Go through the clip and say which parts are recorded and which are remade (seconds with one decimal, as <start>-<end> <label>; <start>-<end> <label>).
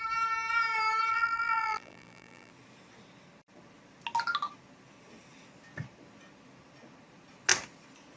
0.0-1.1 recorded; 1.1-2.5 remade; 2.5-8.2 recorded